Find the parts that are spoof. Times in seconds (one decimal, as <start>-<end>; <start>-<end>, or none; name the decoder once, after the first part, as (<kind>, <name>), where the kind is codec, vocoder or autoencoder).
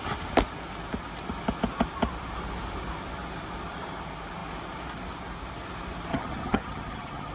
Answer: 6.1-7.3 (vocoder, HiFi-GAN)